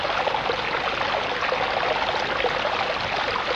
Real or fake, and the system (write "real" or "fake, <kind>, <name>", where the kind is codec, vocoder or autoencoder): real